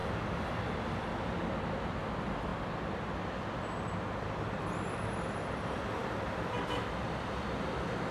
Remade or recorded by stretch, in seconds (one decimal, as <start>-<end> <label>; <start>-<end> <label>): 0.0-8.1 recorded

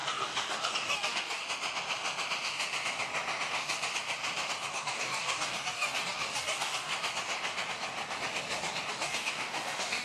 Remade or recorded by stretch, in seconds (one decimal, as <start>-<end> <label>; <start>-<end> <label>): 0.0-1.4 remade; 1.4-4.7 recorded; 4.7-6.9 remade; 6.9-8.9 recorded; 8.9-10.0 remade

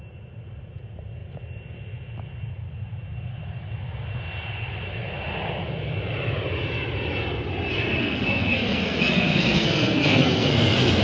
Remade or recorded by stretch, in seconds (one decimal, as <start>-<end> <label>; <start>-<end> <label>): 0.0-7.7 recorded; 7.7-11.0 remade

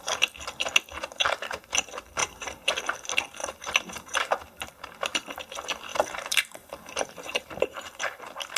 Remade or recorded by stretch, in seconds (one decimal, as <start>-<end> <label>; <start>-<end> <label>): 0.0-2.2 recorded; 2.2-2.8 remade; 2.8-3.4 recorded; 3.4-4.7 remade; 4.7-5.9 recorded; 5.9-8.2 remade; 8.2-8.6 recorded